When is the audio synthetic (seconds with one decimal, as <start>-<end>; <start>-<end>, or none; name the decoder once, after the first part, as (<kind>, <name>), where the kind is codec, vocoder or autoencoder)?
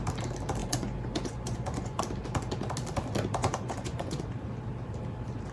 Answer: 0.6-2.0 (vocoder, Vocos); 3.4-4.2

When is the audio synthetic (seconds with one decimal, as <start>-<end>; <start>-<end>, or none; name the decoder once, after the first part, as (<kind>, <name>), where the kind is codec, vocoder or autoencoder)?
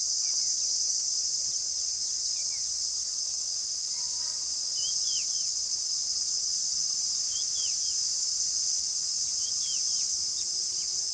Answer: 0.9-2.4 (vocoder, Vocos); 5.0-7.0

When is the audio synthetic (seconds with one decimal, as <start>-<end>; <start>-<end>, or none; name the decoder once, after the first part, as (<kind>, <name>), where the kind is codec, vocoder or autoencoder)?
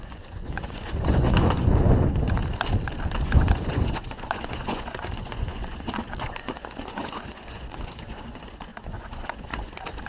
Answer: 0.0-2.4 (vocoder, Vocos); 3.2-10.1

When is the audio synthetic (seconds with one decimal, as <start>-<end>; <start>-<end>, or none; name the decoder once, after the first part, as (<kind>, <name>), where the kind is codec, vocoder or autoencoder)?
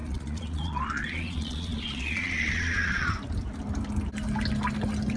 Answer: 0.0-3.1 (vocoder, Vocos)